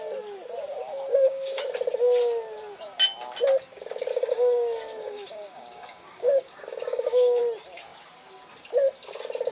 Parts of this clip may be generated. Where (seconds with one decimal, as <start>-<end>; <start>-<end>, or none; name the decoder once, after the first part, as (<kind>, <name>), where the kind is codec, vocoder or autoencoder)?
1.1-1.6 (codec, DAC); 4.1-7.4